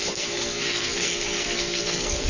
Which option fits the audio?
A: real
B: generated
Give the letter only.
B